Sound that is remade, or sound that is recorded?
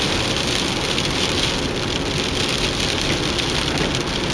recorded